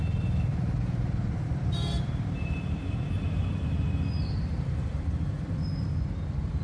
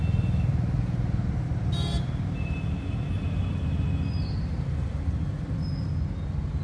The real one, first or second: second